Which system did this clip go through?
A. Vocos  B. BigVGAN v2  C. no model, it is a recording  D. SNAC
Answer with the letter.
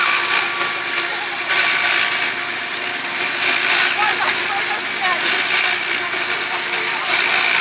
B